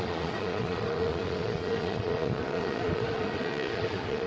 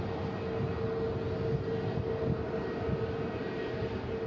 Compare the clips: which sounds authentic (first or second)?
second